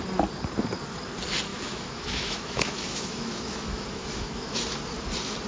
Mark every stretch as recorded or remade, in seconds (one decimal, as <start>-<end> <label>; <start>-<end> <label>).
0.0-1.5 recorded; 1.5-4.8 remade; 4.8-5.5 recorded